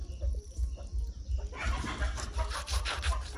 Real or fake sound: fake